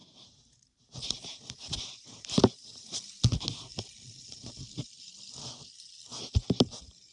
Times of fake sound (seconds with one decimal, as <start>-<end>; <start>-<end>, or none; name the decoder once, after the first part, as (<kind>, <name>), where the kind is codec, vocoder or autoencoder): 0.0-3.0 (vocoder, BigVGAN v2)